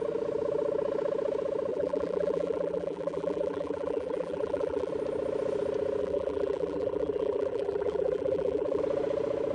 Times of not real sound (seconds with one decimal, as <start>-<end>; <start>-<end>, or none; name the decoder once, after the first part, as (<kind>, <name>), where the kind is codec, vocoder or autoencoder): 1.7-4.9 (vocoder, BigVGAN v2); 6.0-8.8